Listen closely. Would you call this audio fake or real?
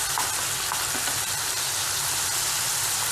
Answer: real